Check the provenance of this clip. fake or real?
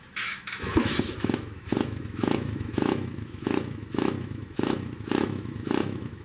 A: fake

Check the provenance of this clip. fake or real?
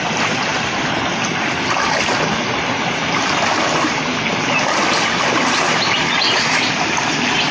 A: real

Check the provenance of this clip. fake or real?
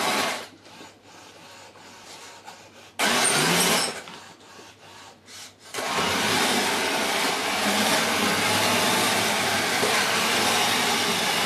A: real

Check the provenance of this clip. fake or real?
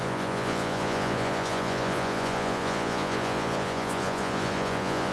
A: fake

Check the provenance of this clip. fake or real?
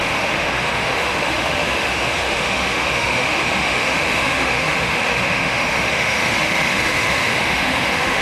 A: fake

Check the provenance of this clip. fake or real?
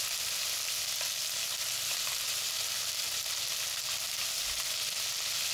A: real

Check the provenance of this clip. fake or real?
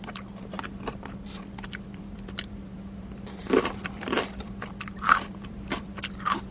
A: fake